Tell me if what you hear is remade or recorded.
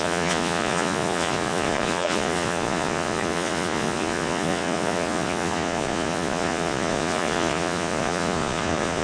remade